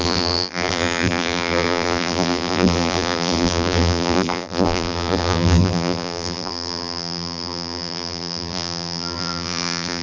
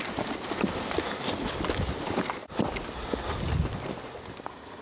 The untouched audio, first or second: second